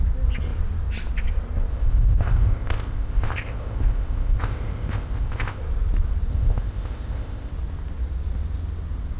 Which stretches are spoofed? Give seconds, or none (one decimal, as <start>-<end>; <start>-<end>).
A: 1.7-5.6; 6.3-7.5